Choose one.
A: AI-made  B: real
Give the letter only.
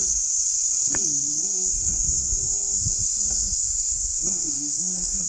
A